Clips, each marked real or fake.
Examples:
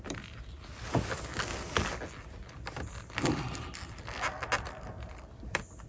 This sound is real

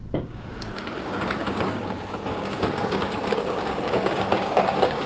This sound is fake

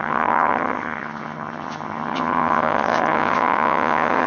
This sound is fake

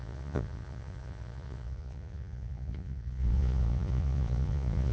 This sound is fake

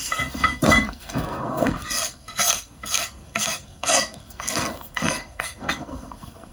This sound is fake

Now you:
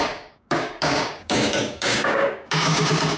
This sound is fake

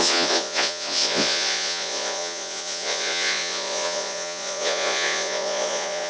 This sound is fake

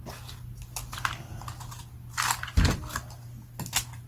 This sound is real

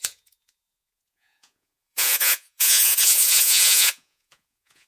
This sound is fake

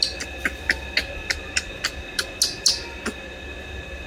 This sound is real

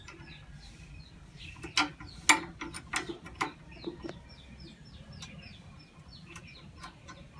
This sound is real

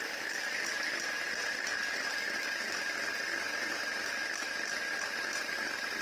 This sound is fake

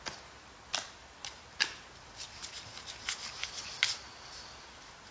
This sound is real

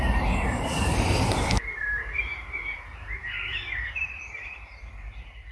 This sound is fake